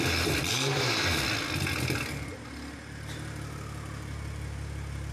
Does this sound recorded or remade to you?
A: recorded